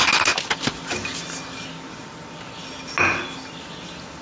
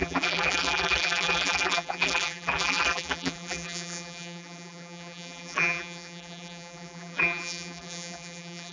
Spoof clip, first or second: second